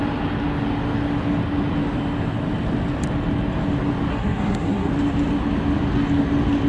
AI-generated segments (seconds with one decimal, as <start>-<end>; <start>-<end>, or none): 4.1-4.9